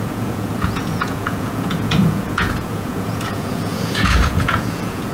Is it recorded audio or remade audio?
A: remade